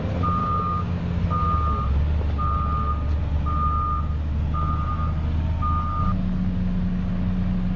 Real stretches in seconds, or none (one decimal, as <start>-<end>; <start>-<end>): 0.0-0.4; 1.0-7.8